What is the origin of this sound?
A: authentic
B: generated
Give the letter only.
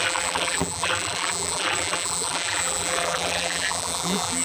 B